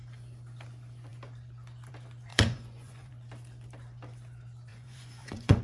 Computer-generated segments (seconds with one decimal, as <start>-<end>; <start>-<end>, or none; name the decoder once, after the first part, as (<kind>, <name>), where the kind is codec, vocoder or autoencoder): 2.3-3.1 (vocoder, Vocos); 4.7-5.6